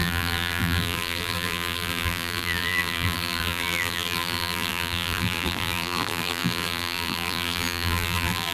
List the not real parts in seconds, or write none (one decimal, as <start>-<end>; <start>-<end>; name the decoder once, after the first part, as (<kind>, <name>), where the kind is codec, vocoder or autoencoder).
0.0-8.5 (vocoder, BigVGAN v2)